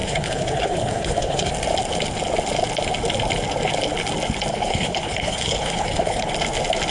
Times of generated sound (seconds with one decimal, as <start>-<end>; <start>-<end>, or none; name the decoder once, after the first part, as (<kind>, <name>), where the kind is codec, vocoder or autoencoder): 0.0-1.5 (codec, HILCodec); 4.5-6.3